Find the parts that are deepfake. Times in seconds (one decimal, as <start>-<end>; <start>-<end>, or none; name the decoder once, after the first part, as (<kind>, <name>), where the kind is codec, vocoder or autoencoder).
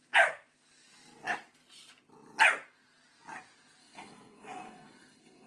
3.8-5.5 (codec, SNAC)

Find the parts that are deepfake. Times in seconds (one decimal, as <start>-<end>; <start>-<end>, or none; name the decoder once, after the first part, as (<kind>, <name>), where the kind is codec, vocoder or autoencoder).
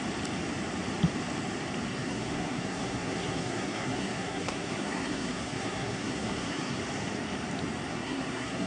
1.9-6.8 (codec, SNAC); 7.9-8.7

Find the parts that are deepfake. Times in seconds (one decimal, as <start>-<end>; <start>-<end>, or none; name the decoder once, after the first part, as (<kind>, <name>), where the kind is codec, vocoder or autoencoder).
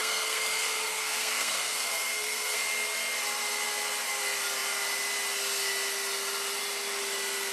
0.0-2.6 (codec, SNAC)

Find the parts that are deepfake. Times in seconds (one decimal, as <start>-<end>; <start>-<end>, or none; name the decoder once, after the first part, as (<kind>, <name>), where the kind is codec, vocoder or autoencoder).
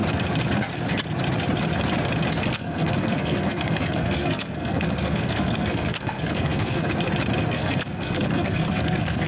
2.5-6.9 (codec, SNAC); 7.5-9.3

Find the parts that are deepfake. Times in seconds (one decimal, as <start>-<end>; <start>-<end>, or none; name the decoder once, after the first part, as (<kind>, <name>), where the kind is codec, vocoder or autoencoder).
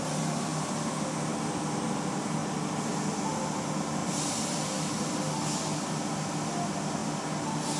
none